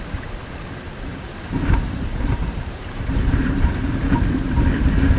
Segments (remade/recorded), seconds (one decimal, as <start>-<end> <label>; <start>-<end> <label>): 0.0-1.1 recorded; 1.1-4.2 remade; 4.2-5.2 recorded